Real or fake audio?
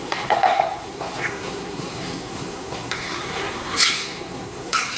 fake